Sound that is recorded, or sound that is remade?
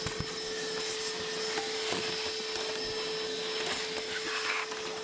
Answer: recorded